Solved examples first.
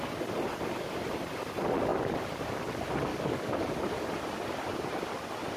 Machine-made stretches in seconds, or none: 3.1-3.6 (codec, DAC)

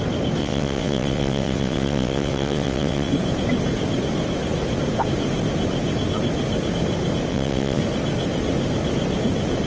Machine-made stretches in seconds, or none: 0.4-3.1 (vocoder, WaveNeXt); 7.3-7.8

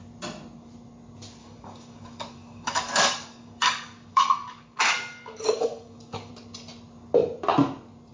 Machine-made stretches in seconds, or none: 1.4-6.3 (codec, DAC)

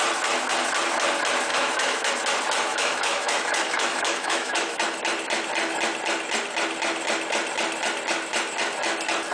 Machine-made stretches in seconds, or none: 1.5-2.1 (autoencoder, DAC-VAE); 2.7-4.8